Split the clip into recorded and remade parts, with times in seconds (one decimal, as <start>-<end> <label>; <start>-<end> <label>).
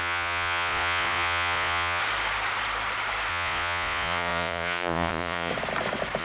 0.0-2.0 remade; 2.0-3.3 recorded; 3.3-5.5 remade; 5.5-6.2 recorded